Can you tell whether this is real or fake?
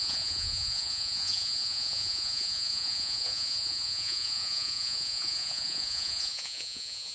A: fake